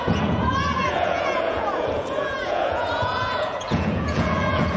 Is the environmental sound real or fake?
fake